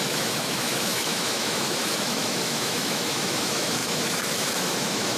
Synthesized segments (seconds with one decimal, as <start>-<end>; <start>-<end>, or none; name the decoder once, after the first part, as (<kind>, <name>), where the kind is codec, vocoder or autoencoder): 0.0-5.2 (autoencoder, DAC-VAE)